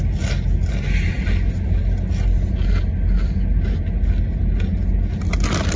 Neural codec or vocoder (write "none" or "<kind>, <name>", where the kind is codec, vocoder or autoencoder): none